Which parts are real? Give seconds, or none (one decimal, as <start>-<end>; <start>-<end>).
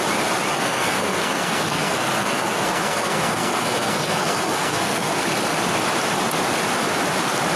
0.0-0.5; 5.1-7.6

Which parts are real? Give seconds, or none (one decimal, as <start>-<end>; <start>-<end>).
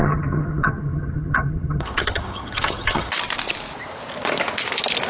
3.1-5.1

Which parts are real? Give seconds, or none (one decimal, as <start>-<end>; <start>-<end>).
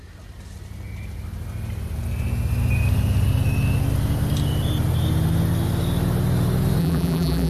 0.0-6.8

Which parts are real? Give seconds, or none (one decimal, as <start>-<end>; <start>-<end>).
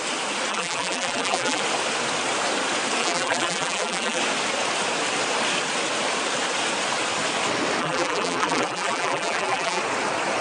0.0-0.5; 1.6-3.0; 4.2-7.8; 9.8-10.4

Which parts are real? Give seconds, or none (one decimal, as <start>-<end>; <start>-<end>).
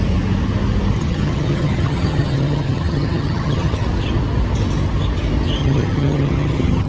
0.0-1.0; 3.9-5.6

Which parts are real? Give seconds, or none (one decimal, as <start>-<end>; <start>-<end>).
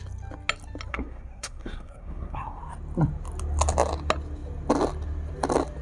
0.0-0.9; 2.6-5.8